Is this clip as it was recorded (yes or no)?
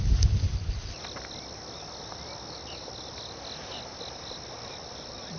yes